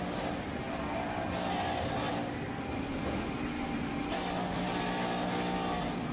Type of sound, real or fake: real